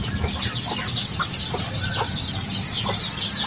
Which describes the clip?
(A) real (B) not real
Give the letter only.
A